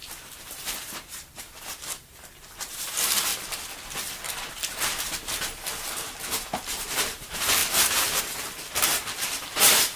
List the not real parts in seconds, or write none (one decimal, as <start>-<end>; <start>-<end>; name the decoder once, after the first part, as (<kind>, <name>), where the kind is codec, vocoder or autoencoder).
0.0-3.3 (vocoder, BigVGAN v2); 4.5-10.0